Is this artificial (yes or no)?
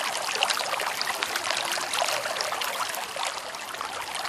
yes